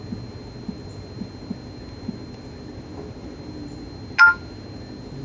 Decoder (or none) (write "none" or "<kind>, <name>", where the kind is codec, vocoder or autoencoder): none